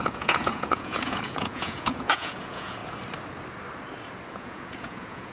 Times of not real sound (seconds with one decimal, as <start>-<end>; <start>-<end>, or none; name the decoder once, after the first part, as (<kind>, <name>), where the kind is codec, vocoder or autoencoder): 0.0-2.8 (vocoder, Vocos); 4.3-5.3

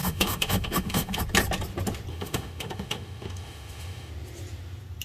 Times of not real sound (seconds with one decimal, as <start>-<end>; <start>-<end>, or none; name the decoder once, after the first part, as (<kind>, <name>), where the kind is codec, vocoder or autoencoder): 0.0-1.2 (autoencoder, DAC-VAE); 2.1-4.1

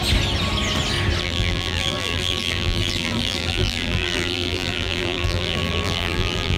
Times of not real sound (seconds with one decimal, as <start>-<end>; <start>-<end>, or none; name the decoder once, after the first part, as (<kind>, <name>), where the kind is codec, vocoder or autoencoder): 1.2-6.6 (vocoder, BigVGAN v2)

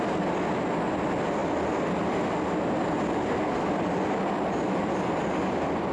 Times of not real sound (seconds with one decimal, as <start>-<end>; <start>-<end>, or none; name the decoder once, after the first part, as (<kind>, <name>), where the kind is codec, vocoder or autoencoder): none

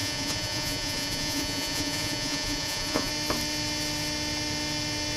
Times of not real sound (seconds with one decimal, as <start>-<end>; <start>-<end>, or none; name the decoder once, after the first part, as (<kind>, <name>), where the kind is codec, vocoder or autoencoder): 0.0-3.1 (vocoder, Vocos)

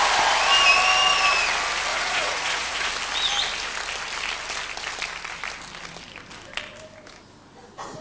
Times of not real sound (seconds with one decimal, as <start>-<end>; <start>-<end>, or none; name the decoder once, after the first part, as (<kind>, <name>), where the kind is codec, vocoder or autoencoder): 1.9-2.9 (vocoder, Vocos)

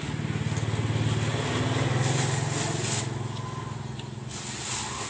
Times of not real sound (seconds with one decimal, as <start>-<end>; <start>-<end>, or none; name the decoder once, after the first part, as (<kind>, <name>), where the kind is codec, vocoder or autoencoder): none

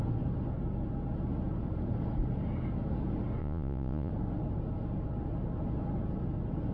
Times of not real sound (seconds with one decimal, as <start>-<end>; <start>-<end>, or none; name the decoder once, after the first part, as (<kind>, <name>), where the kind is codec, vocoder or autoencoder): 3.4-4.1 (vocoder, Vocos)